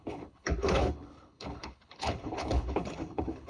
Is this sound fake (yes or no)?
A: yes